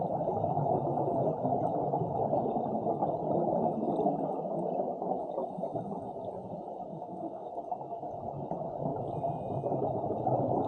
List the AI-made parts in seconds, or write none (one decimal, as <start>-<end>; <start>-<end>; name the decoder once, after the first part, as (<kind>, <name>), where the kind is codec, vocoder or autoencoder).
6.9-7.5 (autoencoder, DAC-VAE)